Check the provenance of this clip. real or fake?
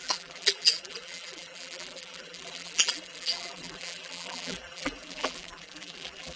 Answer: fake